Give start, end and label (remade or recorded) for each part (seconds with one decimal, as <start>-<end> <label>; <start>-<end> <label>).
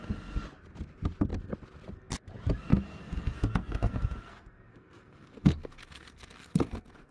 0.0-2.7 recorded; 2.7-7.1 remade